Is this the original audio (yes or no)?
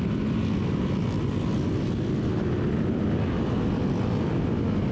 yes